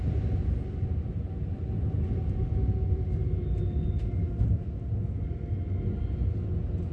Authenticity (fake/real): real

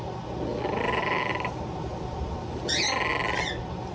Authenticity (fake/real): real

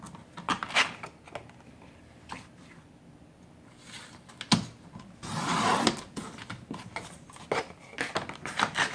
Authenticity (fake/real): real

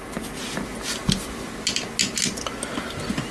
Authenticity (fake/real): real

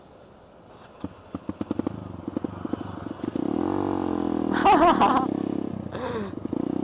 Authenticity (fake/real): real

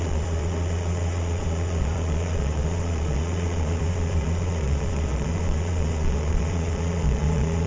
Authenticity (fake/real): fake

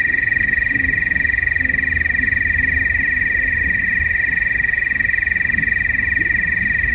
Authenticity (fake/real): real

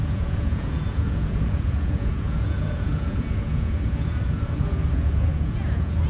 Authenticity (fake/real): fake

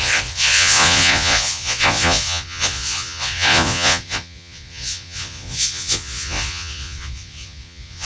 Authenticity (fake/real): fake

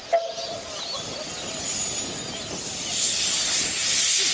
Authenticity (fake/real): real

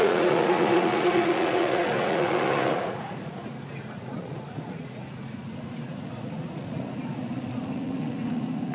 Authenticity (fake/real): fake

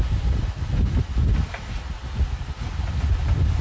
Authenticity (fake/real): real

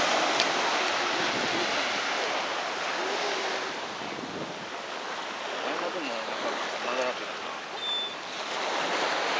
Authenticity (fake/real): real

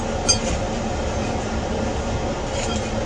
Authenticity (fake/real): real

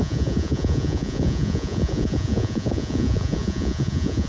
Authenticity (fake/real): fake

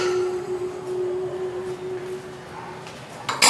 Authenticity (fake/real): real